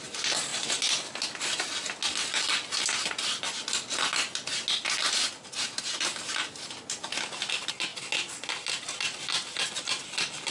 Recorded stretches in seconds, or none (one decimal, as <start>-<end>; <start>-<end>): 0.0-10.5